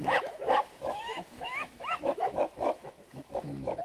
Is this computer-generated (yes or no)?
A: yes